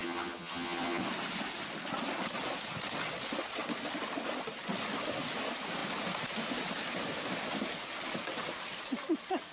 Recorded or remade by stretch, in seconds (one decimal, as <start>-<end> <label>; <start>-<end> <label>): 0.0-1.0 remade; 1.0-9.5 recorded